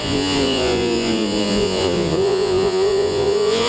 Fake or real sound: fake